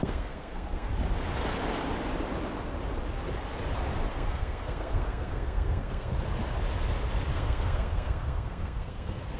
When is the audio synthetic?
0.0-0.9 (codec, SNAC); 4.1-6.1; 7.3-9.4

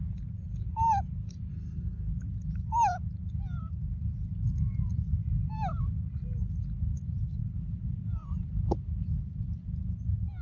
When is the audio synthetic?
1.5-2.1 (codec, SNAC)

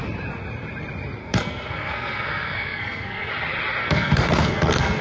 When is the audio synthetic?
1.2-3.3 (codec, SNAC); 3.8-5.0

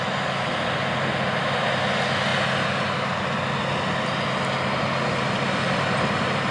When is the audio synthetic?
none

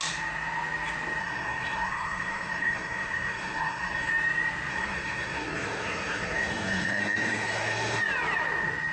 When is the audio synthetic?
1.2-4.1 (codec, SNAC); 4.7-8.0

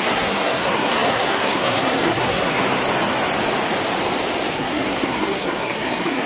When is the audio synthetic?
0.0-2.6 (codec, SNAC); 4.5-6.3